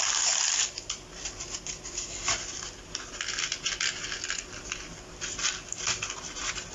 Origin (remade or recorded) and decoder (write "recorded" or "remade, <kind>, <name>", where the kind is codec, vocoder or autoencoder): recorded